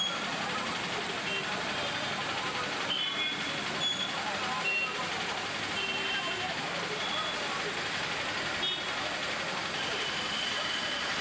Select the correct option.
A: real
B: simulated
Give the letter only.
A